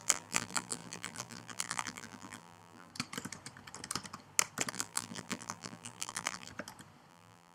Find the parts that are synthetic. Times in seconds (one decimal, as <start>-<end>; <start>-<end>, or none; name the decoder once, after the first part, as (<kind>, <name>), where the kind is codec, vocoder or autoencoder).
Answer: 0.0-2.9 (vocoder, BigVGAN v2); 4.7-6.5; 7.1-7.5